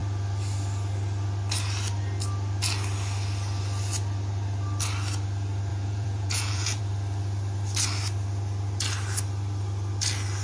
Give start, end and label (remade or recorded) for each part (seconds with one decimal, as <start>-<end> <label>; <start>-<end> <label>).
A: 0.0-5.7 recorded; 5.7-6.8 remade; 6.8-10.4 recorded